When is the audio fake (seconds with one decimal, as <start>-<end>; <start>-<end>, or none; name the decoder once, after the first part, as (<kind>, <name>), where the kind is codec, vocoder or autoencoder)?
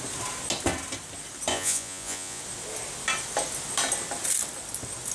1.5-2.4 (vocoder, Vocos)